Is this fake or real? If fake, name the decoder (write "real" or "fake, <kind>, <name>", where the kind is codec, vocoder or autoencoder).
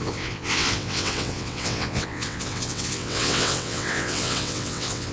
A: fake, vocoder, WaveNeXt